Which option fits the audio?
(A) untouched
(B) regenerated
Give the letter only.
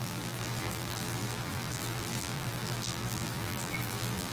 B